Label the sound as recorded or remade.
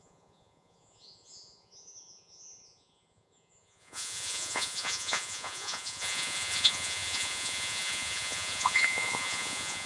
remade